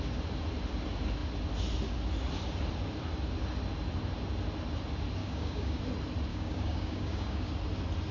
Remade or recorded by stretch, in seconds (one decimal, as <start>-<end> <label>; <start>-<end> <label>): 0.0-5.2 recorded; 5.2-5.8 remade; 5.8-6.3 recorded; 6.3-7.5 remade; 7.5-8.1 recorded